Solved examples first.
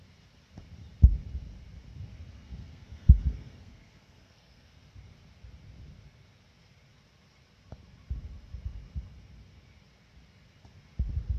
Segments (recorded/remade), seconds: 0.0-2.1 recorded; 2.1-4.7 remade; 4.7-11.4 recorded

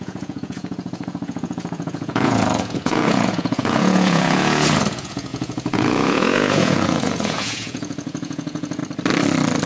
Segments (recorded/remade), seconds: 0.0-8.8 remade; 8.8-9.7 recorded

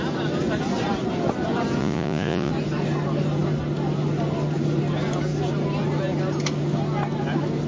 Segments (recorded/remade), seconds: 0.0-1.8 recorded; 1.8-2.5 remade; 2.5-7.7 recorded

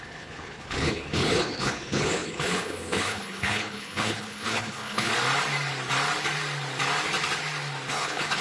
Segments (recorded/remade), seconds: 0.0-5.1 remade; 5.1-7.9 recorded; 7.9-8.4 remade

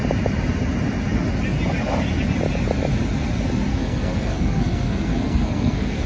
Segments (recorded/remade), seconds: 0.0-3.7 recorded; 3.7-6.1 remade

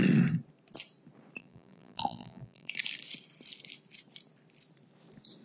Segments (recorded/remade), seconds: 0.0-1.4 recorded; 1.4-2.7 remade; 2.7-5.4 recorded

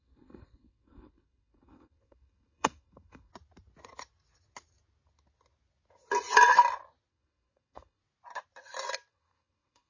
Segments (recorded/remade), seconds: 0.0-3.3 remade; 3.3-7.1 recorded; 7.1-8.0 remade; 8.0-9.1 recorded; 9.1-9.9 remade